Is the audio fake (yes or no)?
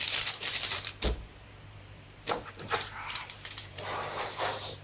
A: yes